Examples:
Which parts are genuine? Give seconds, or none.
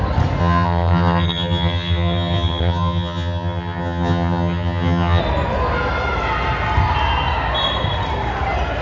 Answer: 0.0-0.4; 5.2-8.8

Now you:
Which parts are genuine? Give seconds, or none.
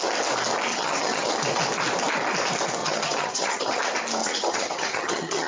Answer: 0.0-0.7; 1.3-2.8; 3.8-4.2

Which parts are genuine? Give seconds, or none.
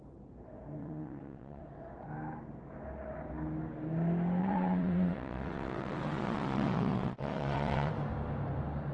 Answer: 0.0-0.8; 1.6-4.4; 7.9-8.9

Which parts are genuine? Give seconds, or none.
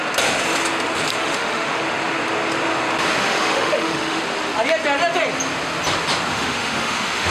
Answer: 0.0-1.2; 1.8-3.2; 4.2-6.3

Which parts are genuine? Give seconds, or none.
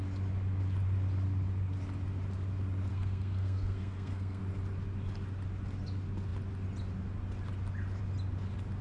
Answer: 0.0-2.9; 4.4-8.8